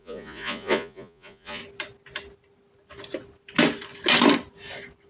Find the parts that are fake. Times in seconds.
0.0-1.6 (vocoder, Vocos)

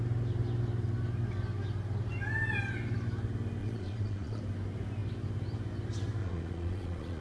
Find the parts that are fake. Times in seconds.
3.6-4.4 (vocoder, Vocos); 6.2-7.2

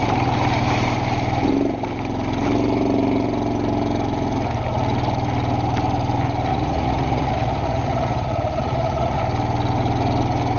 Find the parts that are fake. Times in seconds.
6.5-9.2 (vocoder, Vocos)

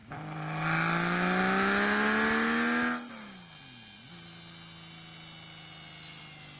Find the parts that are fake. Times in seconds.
none

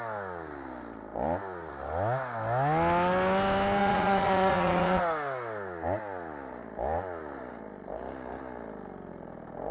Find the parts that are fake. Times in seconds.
3.8-5.0 (vocoder, Vocos)

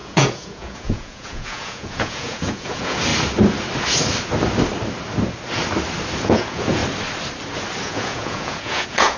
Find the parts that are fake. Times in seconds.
0.0-3.1 (vocoder, Vocos); 6.2-6.8; 7.8-9.2